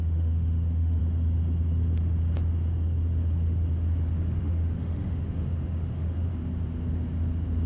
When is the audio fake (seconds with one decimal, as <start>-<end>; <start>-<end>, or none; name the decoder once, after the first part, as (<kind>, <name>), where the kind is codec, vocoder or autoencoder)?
0.0-1.0 (autoencoder, DAC-VAE); 4.4-6.3